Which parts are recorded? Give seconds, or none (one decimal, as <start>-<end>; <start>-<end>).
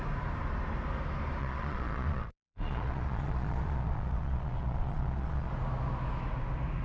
0.0-1.4; 5.5-6.8